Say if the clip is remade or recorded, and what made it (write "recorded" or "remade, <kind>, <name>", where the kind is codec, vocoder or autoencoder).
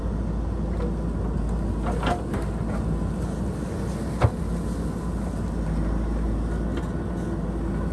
recorded